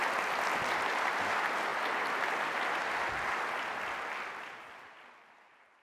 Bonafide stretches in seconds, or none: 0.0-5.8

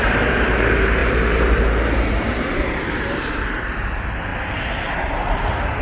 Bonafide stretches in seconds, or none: 4.3-5.1

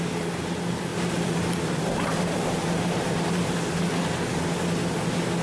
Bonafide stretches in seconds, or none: 0.0-0.9; 3.7-5.4

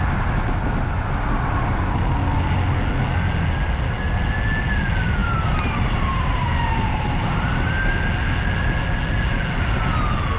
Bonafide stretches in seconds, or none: 0.0-5.2; 7.9-10.4